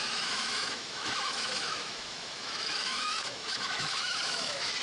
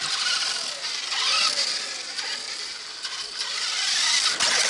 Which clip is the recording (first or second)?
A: second